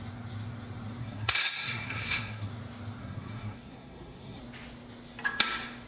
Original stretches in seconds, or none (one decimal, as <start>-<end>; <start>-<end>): 0.0-1.0; 2.5-3.0; 4.4-5.9